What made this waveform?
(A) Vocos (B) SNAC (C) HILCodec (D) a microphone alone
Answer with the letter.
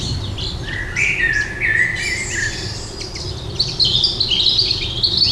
D